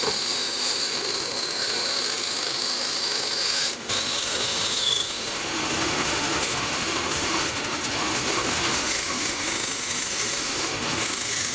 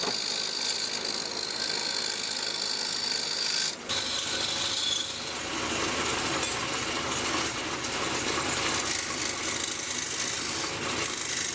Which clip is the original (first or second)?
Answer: second